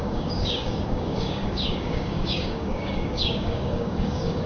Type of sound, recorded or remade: remade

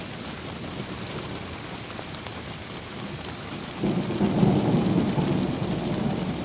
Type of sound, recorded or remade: recorded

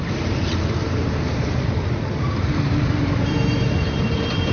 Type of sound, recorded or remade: remade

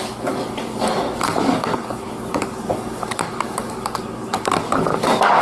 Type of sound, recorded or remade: remade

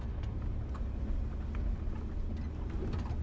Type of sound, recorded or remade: recorded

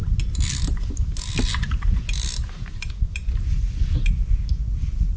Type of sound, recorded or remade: recorded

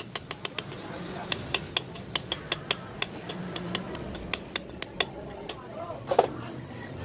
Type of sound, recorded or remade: recorded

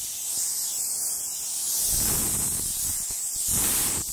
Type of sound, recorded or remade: recorded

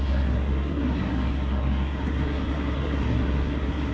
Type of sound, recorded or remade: remade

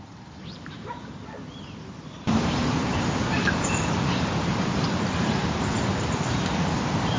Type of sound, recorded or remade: remade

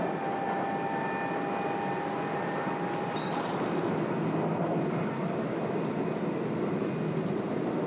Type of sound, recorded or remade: recorded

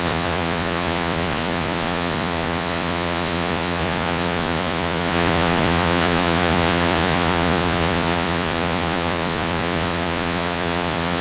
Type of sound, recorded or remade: remade